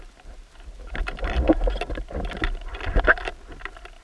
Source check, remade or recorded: recorded